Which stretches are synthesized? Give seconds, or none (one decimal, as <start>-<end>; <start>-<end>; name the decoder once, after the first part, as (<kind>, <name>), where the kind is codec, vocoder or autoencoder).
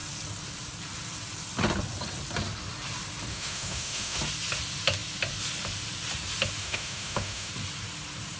3.3-4.2 (autoencoder, DAC-VAE); 6.6-7.5